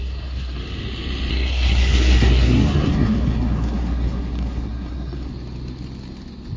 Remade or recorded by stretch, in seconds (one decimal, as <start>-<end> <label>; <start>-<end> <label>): 0.0-0.6 remade; 0.6-1.3 recorded; 1.3-5.3 remade; 5.3-6.6 recorded